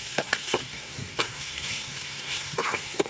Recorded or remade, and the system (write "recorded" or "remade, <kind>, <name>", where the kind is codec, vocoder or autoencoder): remade, codec, SNAC